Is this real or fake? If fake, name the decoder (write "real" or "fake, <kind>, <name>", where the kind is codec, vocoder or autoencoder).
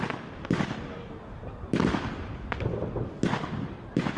real